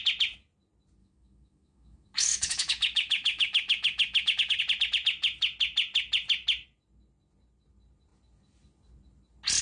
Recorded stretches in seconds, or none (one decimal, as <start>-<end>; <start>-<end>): 0.0-1.0; 4.6-9.6